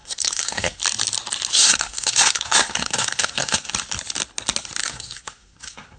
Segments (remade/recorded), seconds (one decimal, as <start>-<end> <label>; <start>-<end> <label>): 0.0-0.8 remade; 0.8-1.5 recorded; 1.5-3.7 remade; 3.7-4.8 recorded; 4.8-6.0 remade